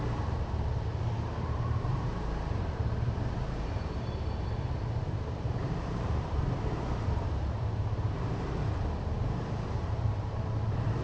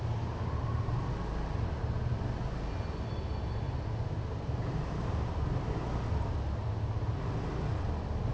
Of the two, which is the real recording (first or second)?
second